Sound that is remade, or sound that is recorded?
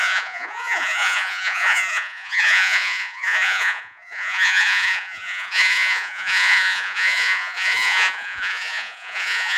remade